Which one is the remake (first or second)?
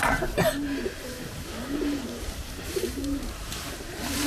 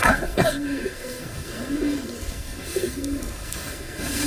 second